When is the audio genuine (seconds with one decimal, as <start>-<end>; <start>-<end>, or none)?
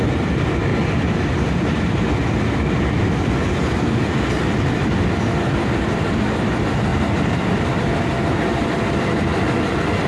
0.0-10.1